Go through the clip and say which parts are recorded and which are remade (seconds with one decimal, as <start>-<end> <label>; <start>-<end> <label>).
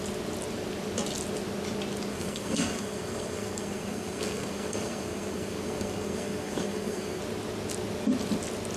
0.0-2.1 recorded; 2.1-7.2 remade; 7.2-8.8 recorded